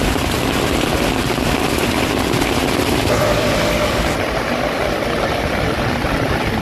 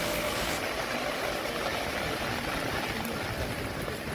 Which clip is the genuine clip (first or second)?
second